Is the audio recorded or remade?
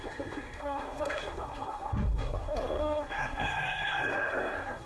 remade